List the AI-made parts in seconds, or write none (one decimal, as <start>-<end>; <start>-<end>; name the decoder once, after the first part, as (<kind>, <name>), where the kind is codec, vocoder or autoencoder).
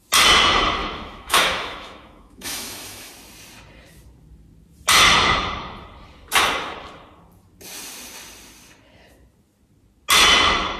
0.8-3.1 (autoencoder, DAC-VAE)